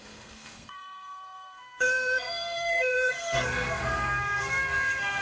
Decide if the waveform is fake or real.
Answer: fake